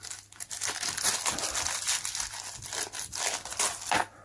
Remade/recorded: recorded